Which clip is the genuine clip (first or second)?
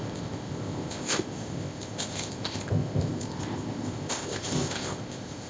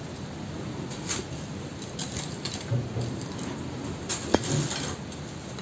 second